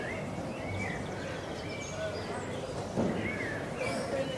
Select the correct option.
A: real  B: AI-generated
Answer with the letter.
A